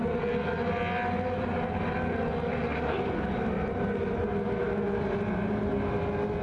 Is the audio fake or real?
real